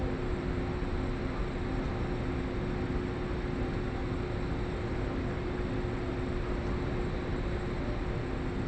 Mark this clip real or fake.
real